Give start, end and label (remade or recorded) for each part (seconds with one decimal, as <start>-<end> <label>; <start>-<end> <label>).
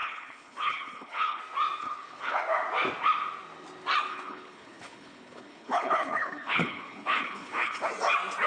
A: 0.0-1.4 remade; 1.4-1.8 recorded; 1.8-2.4 remade; 2.4-4.1 recorded; 4.1-7.9 remade; 7.9-8.5 recorded